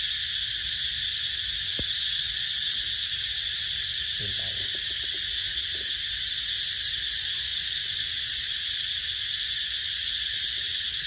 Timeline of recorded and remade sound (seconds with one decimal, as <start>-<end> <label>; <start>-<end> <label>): 0.0-11.1 recorded